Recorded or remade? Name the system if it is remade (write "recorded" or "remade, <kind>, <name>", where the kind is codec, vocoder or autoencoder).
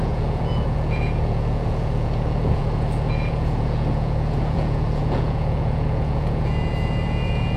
remade, vocoder, Vocos